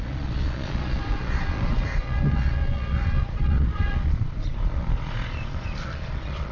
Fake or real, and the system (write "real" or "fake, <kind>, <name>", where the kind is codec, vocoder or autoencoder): fake, vocoder, Vocos